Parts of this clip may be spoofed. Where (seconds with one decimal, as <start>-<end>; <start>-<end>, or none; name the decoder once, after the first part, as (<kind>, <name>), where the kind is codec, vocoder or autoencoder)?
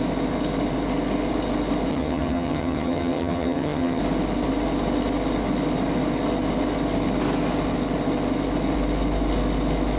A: 1.9-4.0 (vocoder, HiFi-GAN)